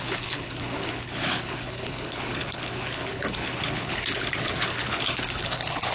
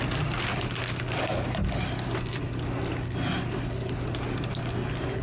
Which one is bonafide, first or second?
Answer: second